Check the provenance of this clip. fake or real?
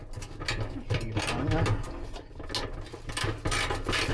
real